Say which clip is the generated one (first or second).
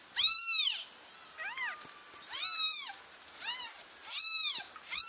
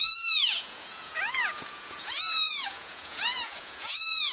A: second